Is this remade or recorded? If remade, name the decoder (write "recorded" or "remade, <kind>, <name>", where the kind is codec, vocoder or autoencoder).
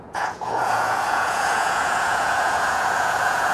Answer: remade, vocoder, Vocos